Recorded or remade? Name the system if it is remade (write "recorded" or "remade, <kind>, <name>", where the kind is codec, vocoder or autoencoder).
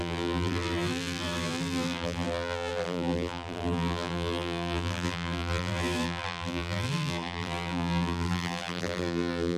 remade, vocoder, BigVGAN v2